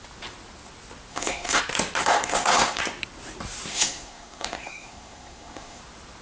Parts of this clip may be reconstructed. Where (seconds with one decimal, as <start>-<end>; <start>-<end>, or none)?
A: 1.1-1.6; 2.0-2.8; 3.7-5.8